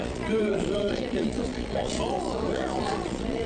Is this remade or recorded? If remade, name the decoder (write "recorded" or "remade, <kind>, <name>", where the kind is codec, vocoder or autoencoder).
remade, vocoder, Vocos